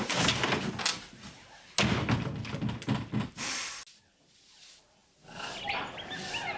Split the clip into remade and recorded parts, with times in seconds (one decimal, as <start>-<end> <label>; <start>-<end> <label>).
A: 0.0-6.6 recorded

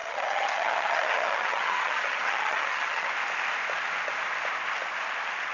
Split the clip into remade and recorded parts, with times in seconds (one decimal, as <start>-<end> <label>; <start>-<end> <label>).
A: 0.0-3.1 remade; 3.1-5.5 recorded

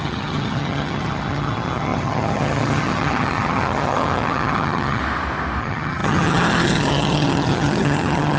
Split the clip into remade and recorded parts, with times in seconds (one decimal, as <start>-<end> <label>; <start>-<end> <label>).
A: 0.0-5.0 remade; 5.0-5.6 recorded; 5.6-8.4 remade

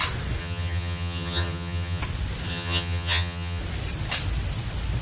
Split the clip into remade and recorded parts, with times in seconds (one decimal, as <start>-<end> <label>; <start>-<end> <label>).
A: 0.0-0.4 recorded; 0.4-2.0 remade; 2.0-2.5 recorded; 2.5-3.6 remade; 3.6-5.0 recorded

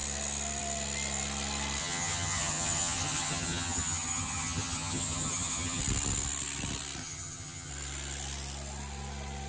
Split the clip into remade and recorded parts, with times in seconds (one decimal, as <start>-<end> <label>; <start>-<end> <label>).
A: 0.0-1.8 recorded; 1.8-5.8 remade; 5.8-7.0 recorded; 7.0-7.7 remade; 7.7-9.5 recorded

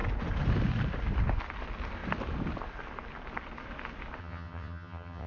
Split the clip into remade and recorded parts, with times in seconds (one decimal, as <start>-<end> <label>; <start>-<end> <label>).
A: 0.0-4.2 recorded; 4.2-5.3 remade

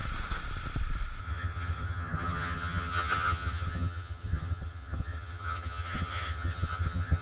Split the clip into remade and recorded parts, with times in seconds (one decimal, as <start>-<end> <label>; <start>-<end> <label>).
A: 0.0-1.2 recorded; 1.2-7.2 remade

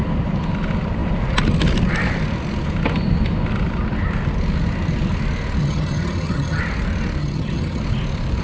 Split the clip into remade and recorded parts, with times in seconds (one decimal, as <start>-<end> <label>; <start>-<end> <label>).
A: 0.0-5.6 recorded; 5.6-6.6 remade; 6.6-7.2 recorded; 7.2-7.8 remade; 7.8-8.4 recorded